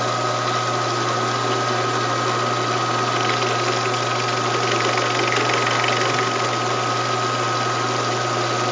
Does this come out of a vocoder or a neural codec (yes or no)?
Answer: no